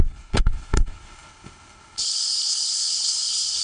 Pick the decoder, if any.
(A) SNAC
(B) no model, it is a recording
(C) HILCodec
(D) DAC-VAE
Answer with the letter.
C